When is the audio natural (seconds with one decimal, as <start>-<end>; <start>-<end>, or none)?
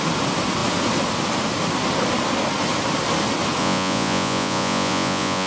0.0-3.6